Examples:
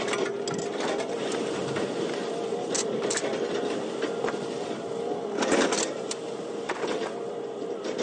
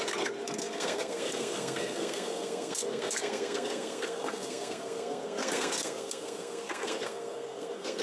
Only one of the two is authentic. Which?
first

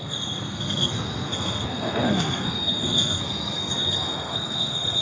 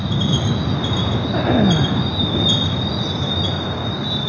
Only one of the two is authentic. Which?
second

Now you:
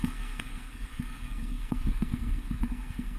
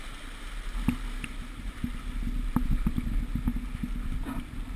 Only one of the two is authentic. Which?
second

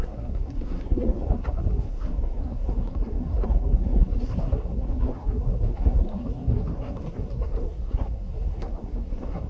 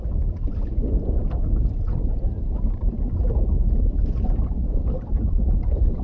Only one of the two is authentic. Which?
second